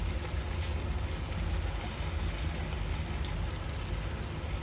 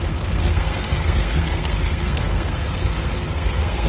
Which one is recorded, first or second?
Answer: first